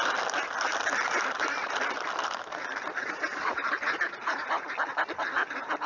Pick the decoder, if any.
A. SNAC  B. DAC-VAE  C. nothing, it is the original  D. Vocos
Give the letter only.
C